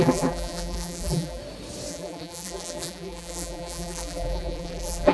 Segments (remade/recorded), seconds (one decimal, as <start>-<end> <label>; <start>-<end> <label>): 0.0-1.4 remade; 1.4-1.9 recorded; 1.9-5.1 remade